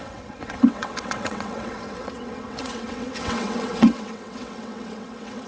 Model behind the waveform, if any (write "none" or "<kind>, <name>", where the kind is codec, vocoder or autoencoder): vocoder, WaveNeXt